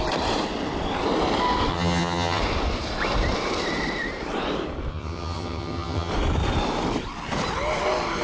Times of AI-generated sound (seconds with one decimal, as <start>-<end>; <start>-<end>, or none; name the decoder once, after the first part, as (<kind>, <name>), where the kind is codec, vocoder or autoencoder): 1.7-2.4 (vocoder, HiFi-GAN); 4.9-6.1